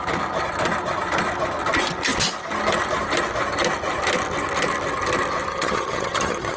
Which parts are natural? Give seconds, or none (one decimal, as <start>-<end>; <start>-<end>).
0.0-5.5